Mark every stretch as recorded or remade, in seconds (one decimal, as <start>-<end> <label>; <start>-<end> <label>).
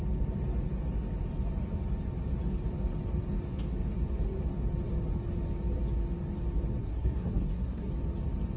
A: 0.0-6.8 recorded; 6.8-7.9 remade; 7.9-8.6 recorded